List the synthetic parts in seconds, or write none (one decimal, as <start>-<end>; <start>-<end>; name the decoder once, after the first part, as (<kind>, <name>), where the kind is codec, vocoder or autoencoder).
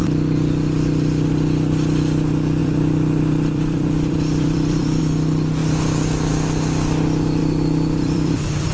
2.6-5.0 (vocoder, BigVGAN v2); 7.4-8.7